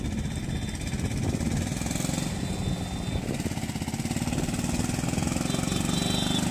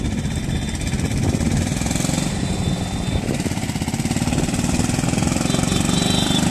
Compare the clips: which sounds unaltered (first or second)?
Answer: first